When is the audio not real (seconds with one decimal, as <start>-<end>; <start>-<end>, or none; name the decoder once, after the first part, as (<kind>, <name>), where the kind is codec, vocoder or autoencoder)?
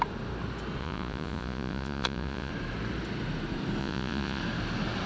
0.8-2.5 (vocoder, Vocos); 3.8-4.4